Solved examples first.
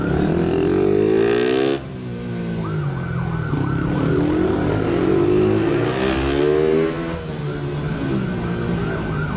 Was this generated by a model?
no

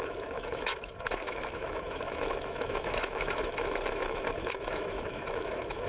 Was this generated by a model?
yes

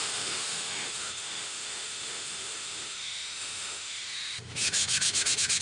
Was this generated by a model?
yes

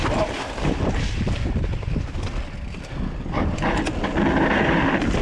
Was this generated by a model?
no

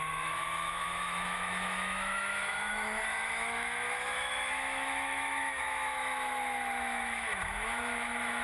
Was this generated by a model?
yes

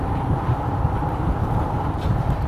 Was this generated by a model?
no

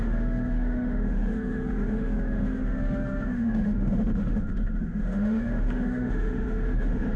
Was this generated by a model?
yes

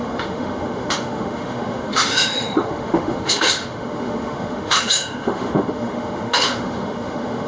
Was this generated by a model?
yes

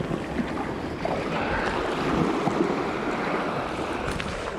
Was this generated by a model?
no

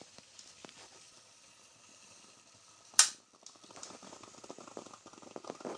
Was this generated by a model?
no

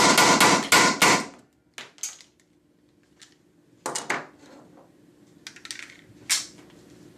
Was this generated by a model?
no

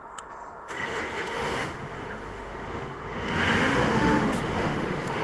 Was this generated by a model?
yes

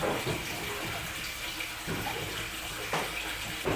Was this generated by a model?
no